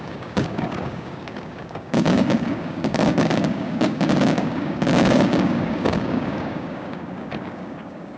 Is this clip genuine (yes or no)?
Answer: no